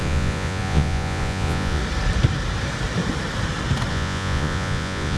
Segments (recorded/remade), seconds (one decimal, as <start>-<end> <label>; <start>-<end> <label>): 0.0-1.8 remade; 1.8-3.9 recorded; 3.9-5.2 remade